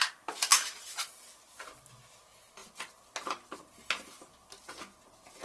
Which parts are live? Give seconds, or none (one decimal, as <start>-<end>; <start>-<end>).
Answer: 0.0-0.5; 1.1-5.4